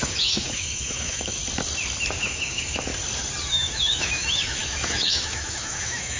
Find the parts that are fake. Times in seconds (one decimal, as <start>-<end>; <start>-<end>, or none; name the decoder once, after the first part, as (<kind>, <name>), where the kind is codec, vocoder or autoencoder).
0.0-1.4 (autoencoder, DAC-VAE); 2.2-2.9; 3.5-6.2